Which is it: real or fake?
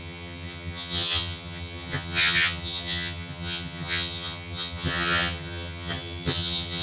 fake